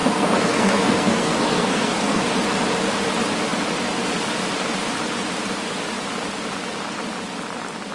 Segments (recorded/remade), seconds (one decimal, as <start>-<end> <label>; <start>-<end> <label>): 0.0-2.3 remade; 2.3-7.9 recorded